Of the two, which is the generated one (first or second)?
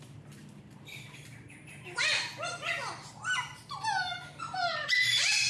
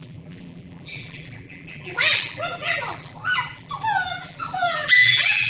second